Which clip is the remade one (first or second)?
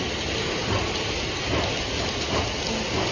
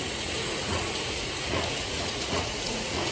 second